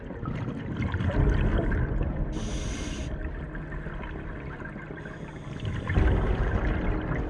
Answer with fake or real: real